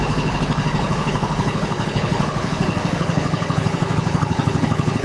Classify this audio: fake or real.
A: fake